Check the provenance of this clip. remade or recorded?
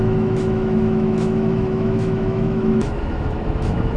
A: remade